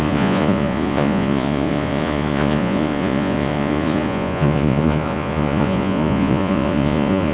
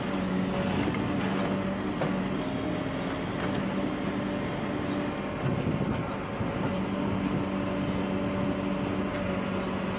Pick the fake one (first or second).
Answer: first